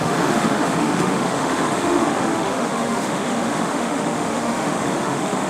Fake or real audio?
fake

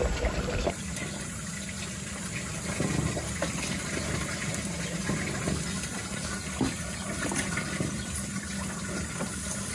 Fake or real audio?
real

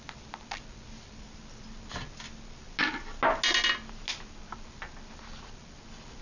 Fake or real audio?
real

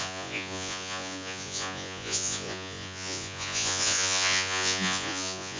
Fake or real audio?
fake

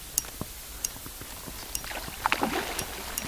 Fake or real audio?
real